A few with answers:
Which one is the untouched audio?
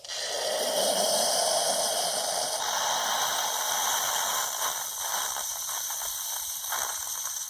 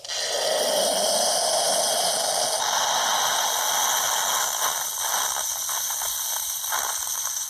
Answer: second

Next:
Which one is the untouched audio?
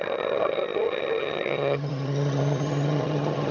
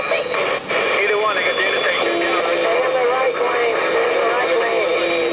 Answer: second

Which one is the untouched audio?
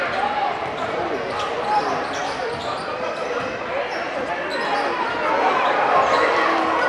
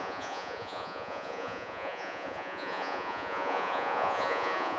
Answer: first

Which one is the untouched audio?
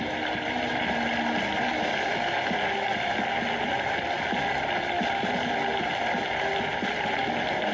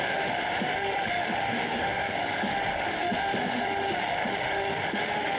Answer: first